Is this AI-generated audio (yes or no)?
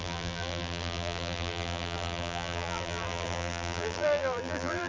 yes